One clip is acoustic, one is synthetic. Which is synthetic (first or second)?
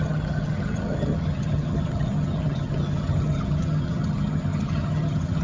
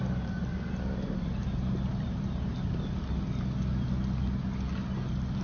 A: first